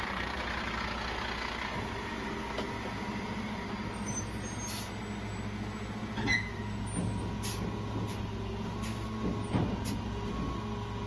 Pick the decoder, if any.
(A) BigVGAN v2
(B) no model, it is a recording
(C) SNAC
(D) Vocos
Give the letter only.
B